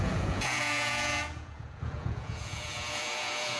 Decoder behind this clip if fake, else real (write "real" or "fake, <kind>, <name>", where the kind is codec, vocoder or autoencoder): fake, vocoder, Vocos